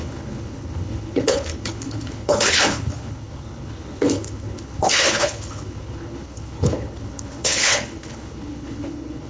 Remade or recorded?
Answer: remade